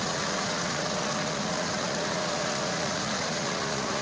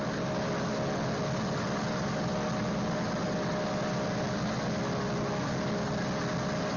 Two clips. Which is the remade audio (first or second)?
first